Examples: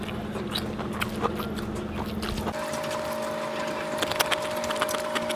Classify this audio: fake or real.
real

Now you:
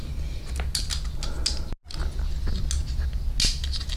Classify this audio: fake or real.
real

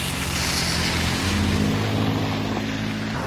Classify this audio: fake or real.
real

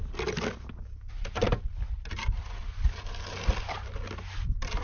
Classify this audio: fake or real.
real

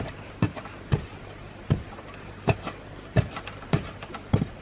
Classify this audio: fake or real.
fake